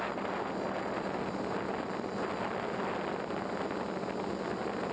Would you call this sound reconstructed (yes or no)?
no